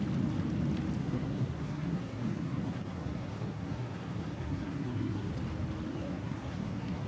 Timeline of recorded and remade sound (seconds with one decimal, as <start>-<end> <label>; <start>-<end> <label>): 0.0-1.0 recorded; 1.0-5.3 remade; 5.3-5.9 recorded; 5.9-7.1 remade